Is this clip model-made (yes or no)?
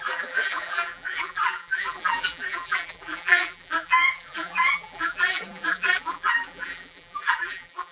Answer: yes